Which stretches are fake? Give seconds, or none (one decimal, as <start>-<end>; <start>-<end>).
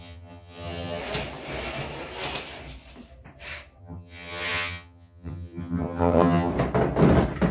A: 0.0-1.0; 3.8-6.5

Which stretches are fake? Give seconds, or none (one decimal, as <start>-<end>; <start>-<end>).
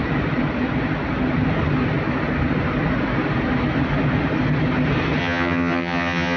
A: 5.2-6.4